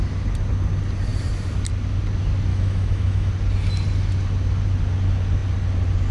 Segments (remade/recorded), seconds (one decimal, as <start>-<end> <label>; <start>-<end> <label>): 0.0-2.5 recorded; 2.5-3.3 remade; 3.3-6.1 recorded